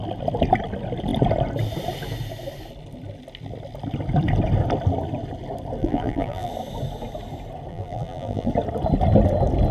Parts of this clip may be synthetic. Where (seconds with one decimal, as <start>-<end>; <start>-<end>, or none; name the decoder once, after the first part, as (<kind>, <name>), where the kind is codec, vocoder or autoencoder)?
5.8-6.5 (vocoder, BigVGAN v2); 7.7-8.5